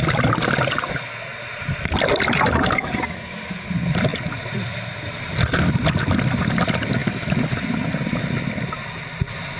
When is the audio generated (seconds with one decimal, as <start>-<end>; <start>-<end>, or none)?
4.1-5.6